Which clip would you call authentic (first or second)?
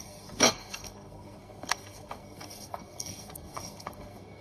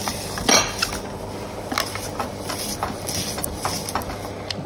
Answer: second